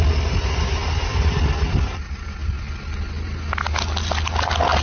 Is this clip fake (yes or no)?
no